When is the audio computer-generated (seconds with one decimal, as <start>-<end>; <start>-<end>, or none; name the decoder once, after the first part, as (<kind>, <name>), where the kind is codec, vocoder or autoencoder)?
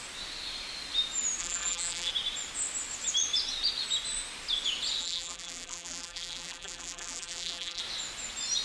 1.4-2.1 (vocoder, BigVGAN v2); 5.0-7.8